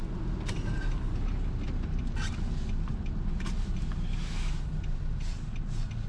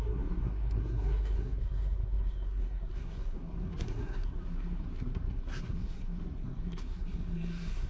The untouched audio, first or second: first